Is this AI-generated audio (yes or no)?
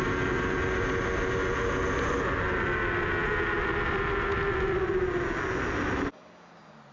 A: no